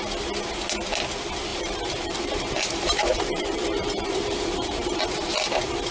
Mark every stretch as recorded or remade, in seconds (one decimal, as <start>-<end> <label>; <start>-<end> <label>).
0.0-1.5 recorded; 1.5-5.0 remade; 5.0-5.9 recorded